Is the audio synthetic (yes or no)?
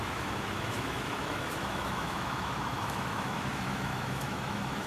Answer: yes